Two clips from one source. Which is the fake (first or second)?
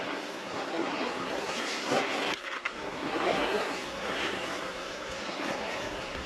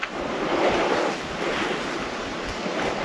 first